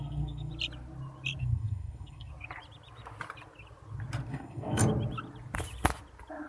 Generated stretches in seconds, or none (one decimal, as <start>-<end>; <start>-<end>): 0.0-0.5; 1.4-2.3; 4.3-4.8